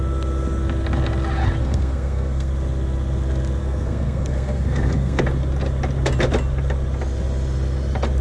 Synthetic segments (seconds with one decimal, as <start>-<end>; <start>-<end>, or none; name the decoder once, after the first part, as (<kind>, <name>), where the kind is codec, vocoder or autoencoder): 1.6-2.5 (codec, SNAC); 3.6-5.2